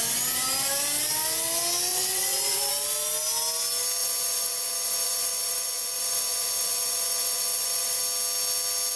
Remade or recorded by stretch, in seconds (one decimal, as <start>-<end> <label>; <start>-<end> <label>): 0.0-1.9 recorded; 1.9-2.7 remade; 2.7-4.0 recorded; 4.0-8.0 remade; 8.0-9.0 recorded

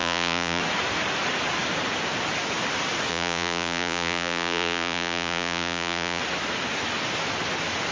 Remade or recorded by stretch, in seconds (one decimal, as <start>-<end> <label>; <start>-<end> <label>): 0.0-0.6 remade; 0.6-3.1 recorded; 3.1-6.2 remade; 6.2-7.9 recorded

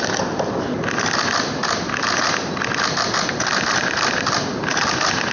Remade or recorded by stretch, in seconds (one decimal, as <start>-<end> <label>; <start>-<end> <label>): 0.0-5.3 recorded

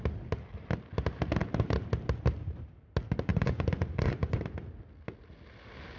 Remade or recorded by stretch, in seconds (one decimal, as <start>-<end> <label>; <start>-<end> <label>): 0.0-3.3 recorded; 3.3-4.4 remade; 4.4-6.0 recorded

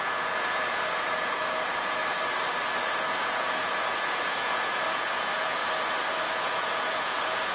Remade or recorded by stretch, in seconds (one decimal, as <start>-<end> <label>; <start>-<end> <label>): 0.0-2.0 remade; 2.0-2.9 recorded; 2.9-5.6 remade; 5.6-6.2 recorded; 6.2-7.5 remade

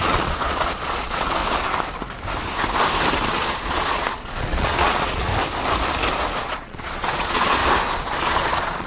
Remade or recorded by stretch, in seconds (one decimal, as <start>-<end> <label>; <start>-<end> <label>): 0.0-1.4 remade; 1.4-3.3 recorded; 3.3-5.3 remade; 5.3-6.4 recorded; 6.4-7.6 remade; 7.6-8.2 recorded; 8.2-8.9 remade

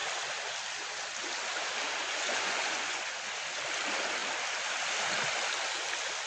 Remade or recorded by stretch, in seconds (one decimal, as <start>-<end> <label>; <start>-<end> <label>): 0.0-2.0 recorded; 2.0-3.2 remade; 3.2-6.3 recorded

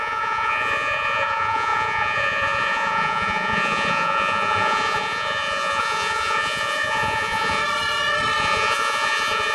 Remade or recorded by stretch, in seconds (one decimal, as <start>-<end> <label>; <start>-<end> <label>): 0.0-7.6 remade; 7.6-8.4 recorded; 8.4-9.5 remade